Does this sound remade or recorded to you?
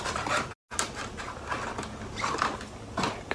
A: recorded